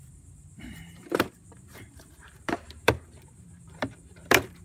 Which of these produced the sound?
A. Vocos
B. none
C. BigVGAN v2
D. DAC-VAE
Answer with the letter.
C